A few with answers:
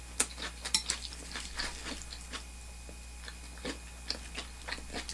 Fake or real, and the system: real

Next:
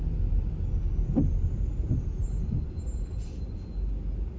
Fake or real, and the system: real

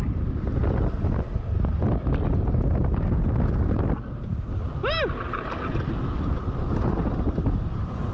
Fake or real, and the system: real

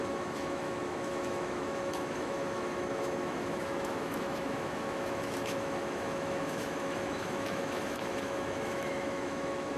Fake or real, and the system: fake, autoencoder, DAC-VAE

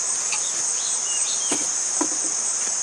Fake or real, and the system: fake, vocoder, BigVGAN v2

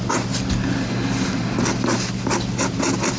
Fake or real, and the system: real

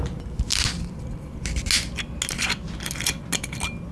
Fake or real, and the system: real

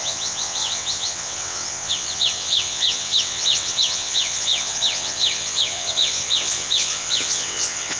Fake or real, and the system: fake, vocoder, WaveNeXt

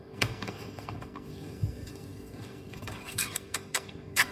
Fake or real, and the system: fake, codec, SNAC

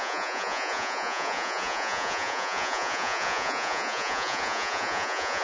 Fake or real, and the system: fake, vocoder, Vocos